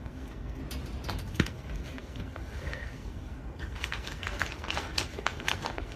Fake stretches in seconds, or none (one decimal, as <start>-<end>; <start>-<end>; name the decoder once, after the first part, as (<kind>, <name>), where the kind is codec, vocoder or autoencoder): 0.0-0.6 (codec, SNAC); 1.2-6.0